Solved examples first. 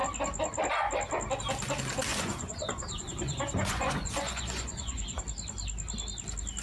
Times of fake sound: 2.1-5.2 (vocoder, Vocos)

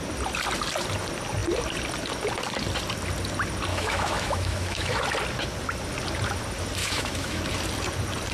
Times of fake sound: 3.7-5.0 (autoencoder, DAC-VAE); 6.8-7.4